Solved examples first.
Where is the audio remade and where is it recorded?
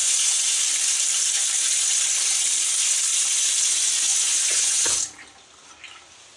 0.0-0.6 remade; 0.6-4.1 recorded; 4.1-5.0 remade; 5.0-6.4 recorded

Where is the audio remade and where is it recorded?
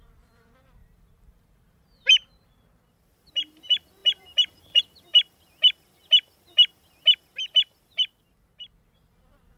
0.0-0.8 recorded; 0.8-2.5 remade; 2.5-4.0 recorded; 4.0-4.8 remade; 4.8-9.6 recorded